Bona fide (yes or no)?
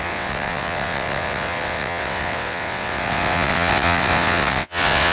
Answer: no